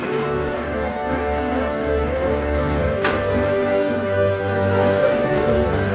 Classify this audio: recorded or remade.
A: remade